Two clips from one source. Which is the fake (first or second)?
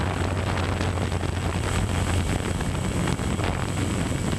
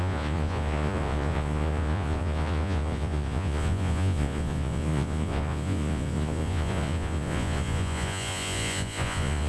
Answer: second